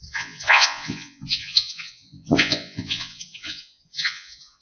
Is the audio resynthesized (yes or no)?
yes